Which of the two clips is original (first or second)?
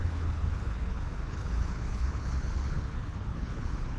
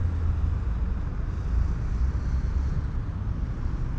second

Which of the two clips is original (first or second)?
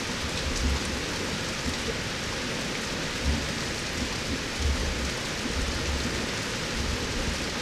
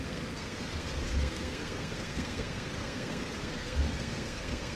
first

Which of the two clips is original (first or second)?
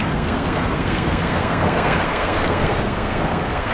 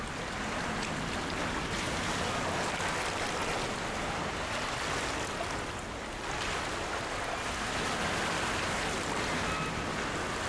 second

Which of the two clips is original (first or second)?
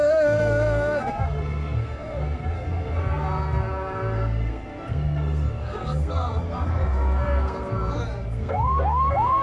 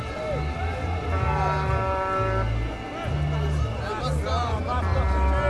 second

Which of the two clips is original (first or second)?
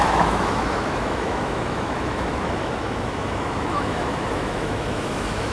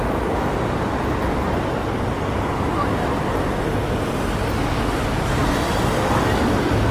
second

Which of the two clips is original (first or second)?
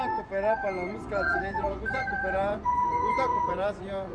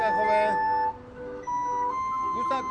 second